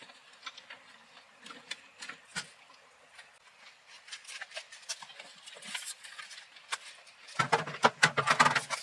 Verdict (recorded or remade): recorded